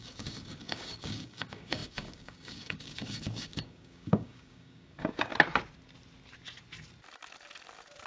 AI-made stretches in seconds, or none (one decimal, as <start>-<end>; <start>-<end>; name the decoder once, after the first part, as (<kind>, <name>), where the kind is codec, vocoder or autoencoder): 0.0-5.3 (codec, DAC)